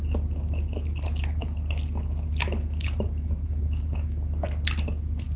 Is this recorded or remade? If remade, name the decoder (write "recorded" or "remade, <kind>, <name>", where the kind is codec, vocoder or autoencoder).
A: recorded